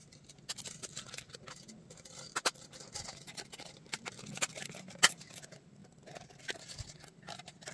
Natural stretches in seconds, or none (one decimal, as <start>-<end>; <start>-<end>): 0.0-7.7